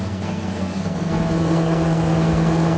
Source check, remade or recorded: remade